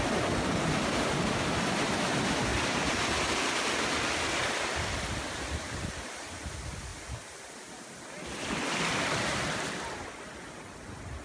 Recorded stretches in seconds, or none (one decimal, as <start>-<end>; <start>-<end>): 0.0-11.2